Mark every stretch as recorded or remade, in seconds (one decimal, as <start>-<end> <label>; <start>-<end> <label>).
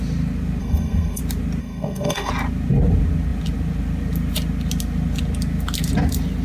0.0-0.6 recorded; 0.6-1.2 remade; 1.2-1.6 recorded; 1.6-2.3 remade; 2.3-6.4 recorded